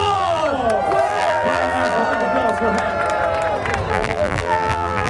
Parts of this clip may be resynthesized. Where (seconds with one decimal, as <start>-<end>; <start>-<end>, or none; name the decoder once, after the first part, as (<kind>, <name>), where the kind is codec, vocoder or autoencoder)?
0.0-0.4 (vocoder, BigVGAN v2); 1.1-2.0; 3.9-5.1